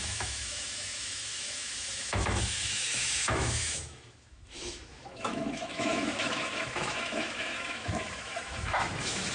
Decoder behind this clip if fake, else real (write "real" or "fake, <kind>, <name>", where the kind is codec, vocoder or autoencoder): fake, autoencoder, DAC-VAE